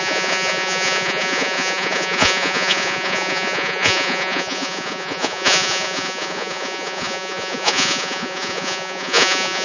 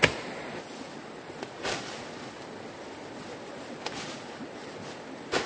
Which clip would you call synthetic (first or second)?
first